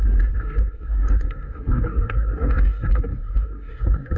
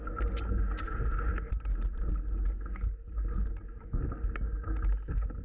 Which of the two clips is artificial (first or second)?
first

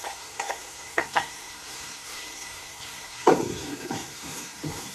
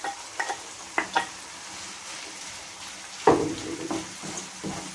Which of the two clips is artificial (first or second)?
first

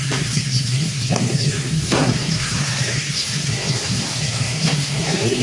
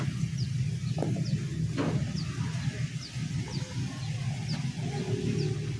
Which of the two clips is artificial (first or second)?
first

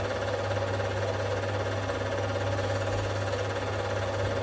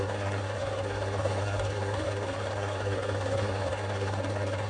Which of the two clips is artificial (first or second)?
second